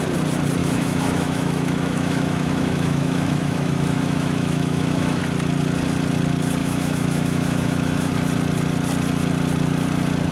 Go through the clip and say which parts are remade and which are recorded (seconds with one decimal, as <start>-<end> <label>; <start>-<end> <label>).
0.0-0.6 recorded; 0.6-5.2 remade; 5.2-6.6 recorded; 6.6-8.1 remade; 8.1-10.3 recorded

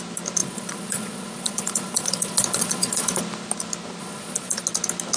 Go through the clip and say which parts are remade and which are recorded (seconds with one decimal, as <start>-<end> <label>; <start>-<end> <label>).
0.0-0.4 recorded; 0.4-3.2 remade; 3.2-4.0 recorded; 4.0-4.6 remade; 4.6-5.2 recorded

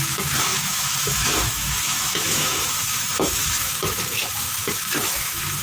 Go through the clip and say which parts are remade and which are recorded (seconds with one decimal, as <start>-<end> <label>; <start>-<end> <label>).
0.0-5.6 remade